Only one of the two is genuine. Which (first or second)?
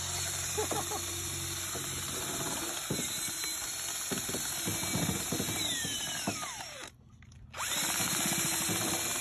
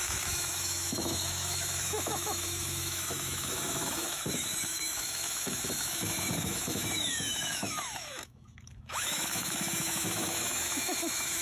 first